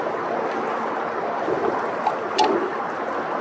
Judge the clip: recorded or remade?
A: recorded